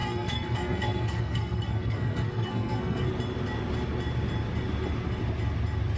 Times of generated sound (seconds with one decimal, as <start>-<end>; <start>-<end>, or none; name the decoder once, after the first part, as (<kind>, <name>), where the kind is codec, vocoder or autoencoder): 0.0-3.1 (codec, SNAC)